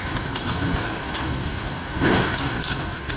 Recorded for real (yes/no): no